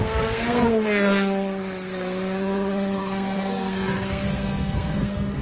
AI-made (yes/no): yes